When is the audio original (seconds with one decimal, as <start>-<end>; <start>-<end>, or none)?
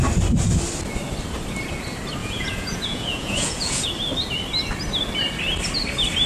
0.0-2.2; 3.9-6.3